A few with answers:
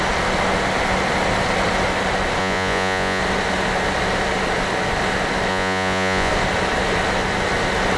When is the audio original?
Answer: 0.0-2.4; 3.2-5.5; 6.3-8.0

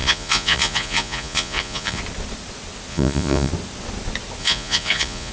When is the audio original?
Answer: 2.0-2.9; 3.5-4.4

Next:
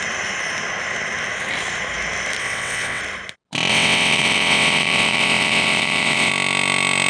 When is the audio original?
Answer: 0.0-2.4; 3.0-3.7; 6.3-7.1